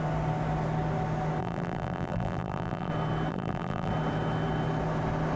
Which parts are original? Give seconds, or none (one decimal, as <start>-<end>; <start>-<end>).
0.0-1.4; 2.9-3.3; 3.9-5.4